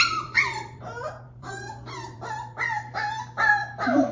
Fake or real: fake